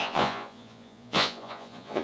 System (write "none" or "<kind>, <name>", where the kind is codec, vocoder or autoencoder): vocoder, Vocos